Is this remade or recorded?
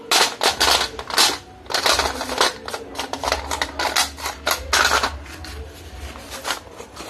recorded